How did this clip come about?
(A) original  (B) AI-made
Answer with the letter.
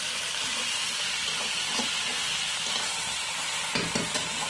A